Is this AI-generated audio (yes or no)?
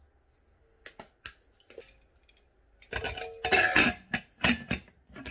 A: no